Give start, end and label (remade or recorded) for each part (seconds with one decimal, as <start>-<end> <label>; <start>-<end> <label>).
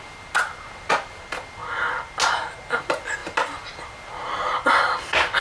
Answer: 0.0-5.4 recorded